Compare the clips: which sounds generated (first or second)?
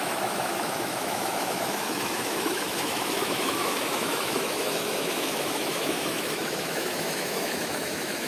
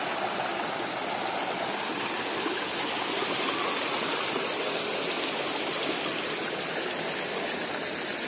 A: first